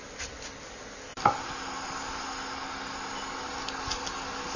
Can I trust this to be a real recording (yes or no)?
yes